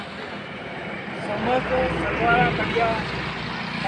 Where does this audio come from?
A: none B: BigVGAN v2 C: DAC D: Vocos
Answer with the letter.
A